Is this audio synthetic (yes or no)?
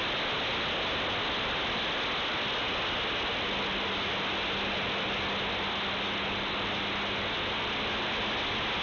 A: no